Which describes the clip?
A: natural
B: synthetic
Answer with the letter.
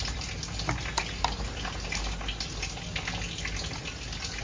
A